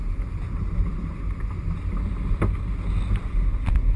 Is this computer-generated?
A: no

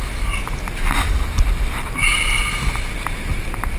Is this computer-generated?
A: no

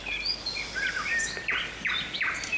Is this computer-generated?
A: no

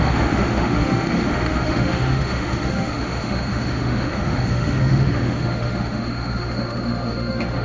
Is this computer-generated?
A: yes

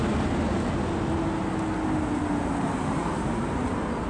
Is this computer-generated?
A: no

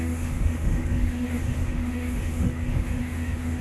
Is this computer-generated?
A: yes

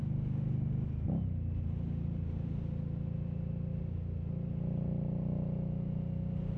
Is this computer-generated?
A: no